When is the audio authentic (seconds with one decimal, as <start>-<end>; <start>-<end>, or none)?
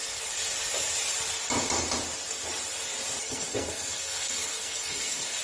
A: 0.0-3.2